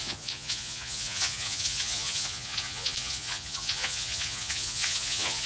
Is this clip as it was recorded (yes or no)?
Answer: no